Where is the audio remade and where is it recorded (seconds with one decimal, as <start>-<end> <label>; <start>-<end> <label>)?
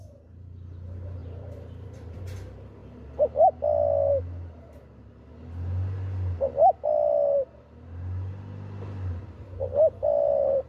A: 0.0-1.2 recorded; 1.2-2.2 remade; 2.2-10.7 recorded